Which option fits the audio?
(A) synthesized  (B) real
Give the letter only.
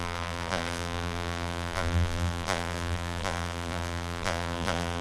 A